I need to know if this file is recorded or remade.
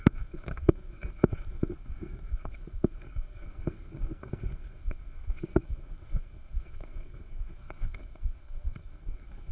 remade